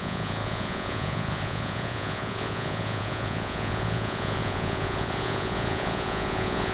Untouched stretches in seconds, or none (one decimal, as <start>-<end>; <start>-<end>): none